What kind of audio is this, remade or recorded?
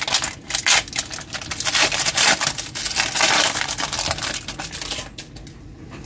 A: recorded